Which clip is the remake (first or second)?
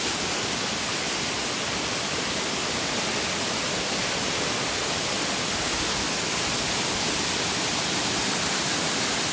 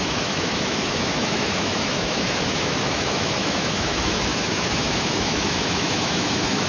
second